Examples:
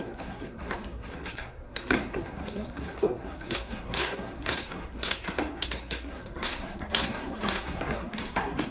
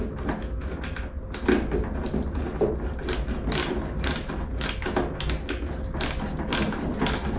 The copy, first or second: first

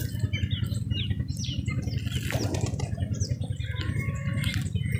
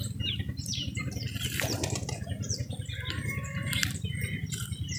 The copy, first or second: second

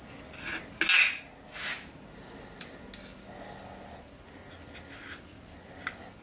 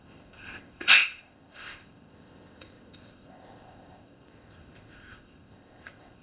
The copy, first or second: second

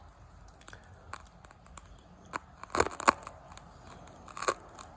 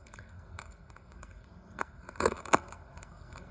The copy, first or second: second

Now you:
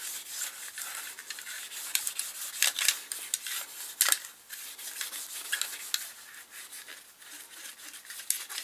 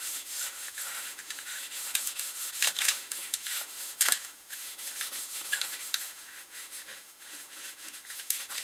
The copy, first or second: second